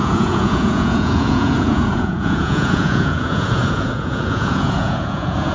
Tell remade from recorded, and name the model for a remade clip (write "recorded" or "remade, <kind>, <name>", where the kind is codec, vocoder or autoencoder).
remade, vocoder, Vocos